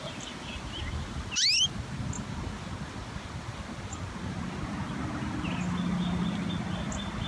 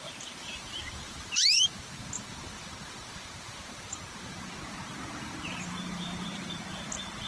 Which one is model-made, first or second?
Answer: second